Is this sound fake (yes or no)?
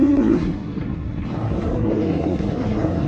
yes